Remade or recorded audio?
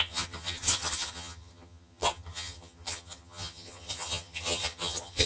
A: remade